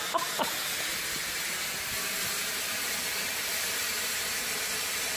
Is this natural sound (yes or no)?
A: yes